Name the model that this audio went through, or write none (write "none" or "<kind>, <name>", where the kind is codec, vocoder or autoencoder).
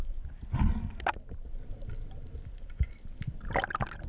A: none